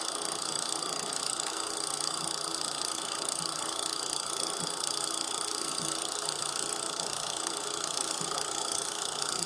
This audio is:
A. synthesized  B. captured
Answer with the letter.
A